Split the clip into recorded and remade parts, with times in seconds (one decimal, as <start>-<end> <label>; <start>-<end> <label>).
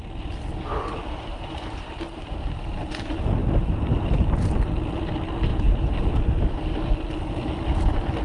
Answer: 0.0-1.3 recorded; 1.3-2.3 remade; 2.3-3.4 recorded; 3.4-4.5 remade; 4.5-5.5 recorded; 5.5-6.1 remade; 6.1-8.2 recorded